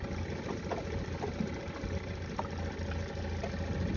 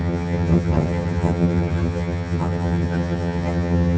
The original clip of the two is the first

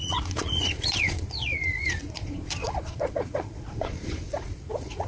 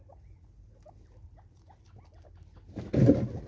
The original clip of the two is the second